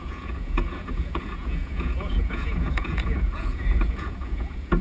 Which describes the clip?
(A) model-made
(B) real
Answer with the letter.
A